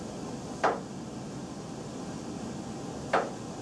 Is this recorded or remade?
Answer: recorded